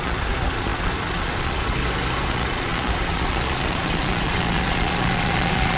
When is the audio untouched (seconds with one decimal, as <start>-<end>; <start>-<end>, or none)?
1.8-2.3